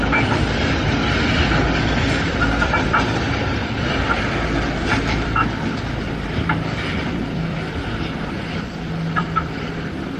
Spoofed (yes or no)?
yes